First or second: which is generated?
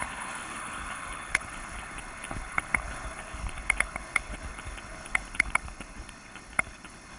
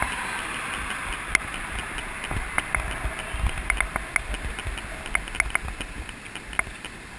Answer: first